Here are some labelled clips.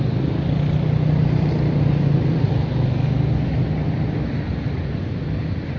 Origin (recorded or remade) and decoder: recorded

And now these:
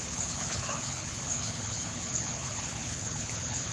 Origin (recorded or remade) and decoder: remade, codec, HILCodec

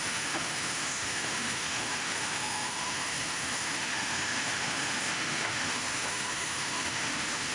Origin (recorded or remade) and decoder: remade, autoencoder, DAC-VAE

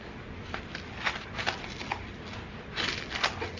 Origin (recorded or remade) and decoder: recorded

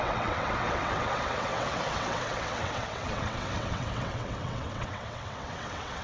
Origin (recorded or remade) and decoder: remade, vocoder, WaveNeXt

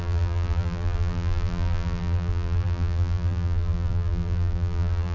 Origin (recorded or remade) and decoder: remade, vocoder, BigVGAN v2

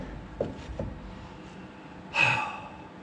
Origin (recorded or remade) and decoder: recorded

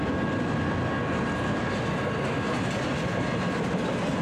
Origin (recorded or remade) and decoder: recorded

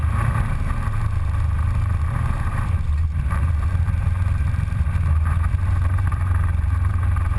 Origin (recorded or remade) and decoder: remade, vocoder, BigVGAN v2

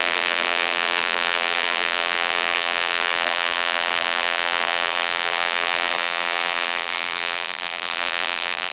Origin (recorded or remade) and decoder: remade, vocoder, BigVGAN v2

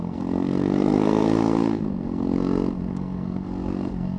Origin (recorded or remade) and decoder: remade, codec, SNAC